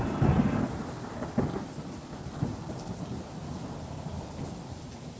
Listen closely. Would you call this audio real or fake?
real